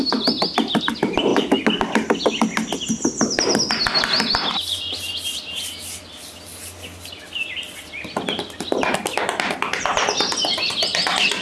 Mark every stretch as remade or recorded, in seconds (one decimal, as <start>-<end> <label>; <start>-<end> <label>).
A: 0.0-11.4 recorded